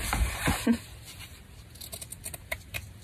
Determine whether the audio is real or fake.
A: real